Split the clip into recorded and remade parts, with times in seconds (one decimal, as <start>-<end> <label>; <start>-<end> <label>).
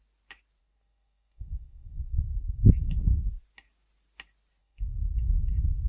0.0-0.6 recorded; 0.6-3.0 remade; 3.0-4.6 recorded; 4.6-5.4 remade; 5.4-5.9 recorded